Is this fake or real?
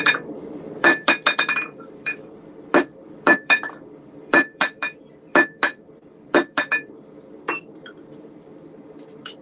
fake